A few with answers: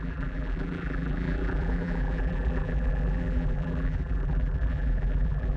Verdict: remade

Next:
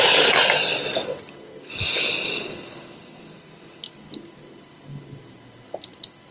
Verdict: recorded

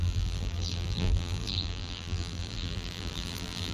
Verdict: remade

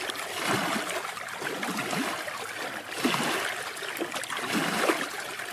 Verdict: recorded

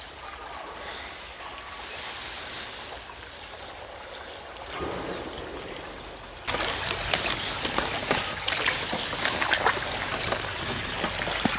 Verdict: recorded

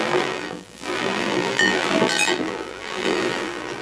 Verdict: remade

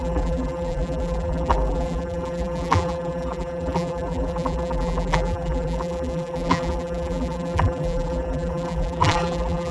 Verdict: remade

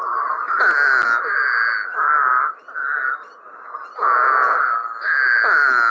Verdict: recorded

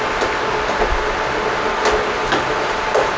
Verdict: recorded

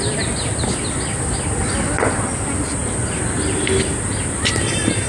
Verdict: recorded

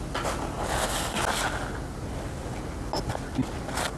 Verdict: recorded